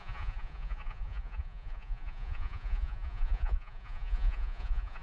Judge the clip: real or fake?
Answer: fake